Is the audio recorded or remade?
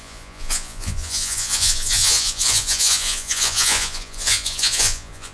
remade